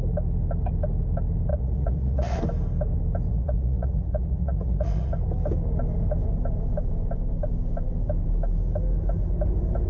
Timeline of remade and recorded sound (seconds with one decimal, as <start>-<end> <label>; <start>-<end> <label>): 0.0-1.5 recorded; 1.5-2.4 remade; 2.4-3.3 recorded; 3.3-5.1 remade; 5.1-9.9 recorded

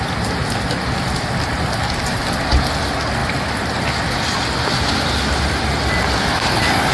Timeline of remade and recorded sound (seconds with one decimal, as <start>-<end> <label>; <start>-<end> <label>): 0.0-6.9 recorded

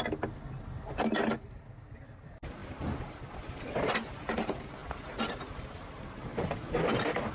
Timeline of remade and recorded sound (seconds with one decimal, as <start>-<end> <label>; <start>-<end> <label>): 0.0-7.3 recorded

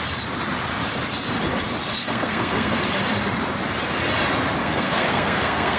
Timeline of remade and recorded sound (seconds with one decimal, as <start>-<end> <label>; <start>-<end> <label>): 0.0-2.0 recorded; 2.0-2.8 remade; 2.8-4.6 recorded; 4.6-5.8 remade

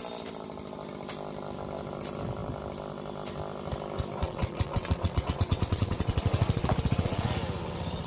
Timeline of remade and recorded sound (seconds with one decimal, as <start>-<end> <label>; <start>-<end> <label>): 0.0-4.2 recorded; 4.2-7.3 remade; 7.3-8.1 recorded